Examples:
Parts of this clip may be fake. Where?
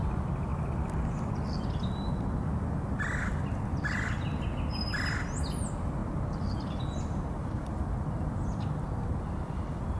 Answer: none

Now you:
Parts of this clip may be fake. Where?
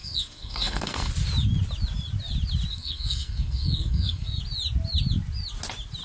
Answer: 0.0-1.1 (codec, SNAC); 2.7-4.4